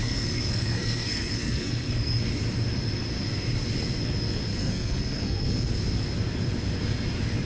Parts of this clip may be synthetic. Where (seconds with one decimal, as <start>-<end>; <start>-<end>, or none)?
0.0-2.2; 4.5-5.7